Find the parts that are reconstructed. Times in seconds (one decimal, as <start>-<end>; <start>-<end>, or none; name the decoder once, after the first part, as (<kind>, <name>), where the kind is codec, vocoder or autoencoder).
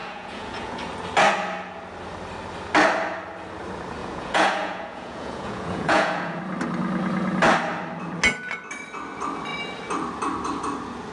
0.0-0.8 (vocoder, Vocos); 4.0-6.4